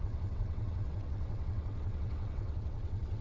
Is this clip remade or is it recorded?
remade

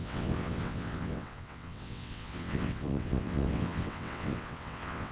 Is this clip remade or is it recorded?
remade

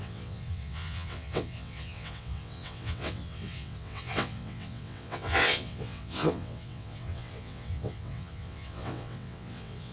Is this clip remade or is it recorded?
remade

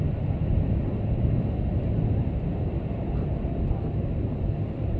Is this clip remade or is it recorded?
recorded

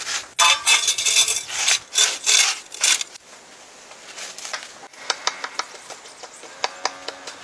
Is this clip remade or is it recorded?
recorded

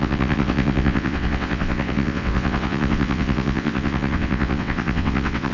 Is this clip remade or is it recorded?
remade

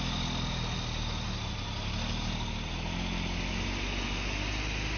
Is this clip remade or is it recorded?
recorded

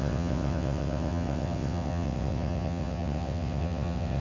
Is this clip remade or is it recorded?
remade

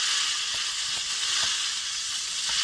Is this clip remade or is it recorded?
remade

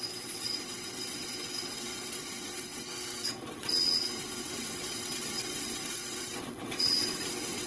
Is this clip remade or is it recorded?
remade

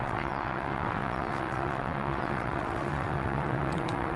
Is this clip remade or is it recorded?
remade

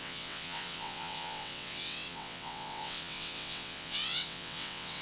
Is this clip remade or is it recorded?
remade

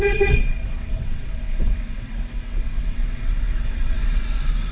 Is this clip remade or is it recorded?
remade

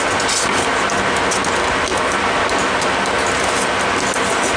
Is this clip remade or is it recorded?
recorded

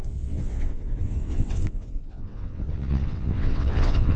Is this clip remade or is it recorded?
remade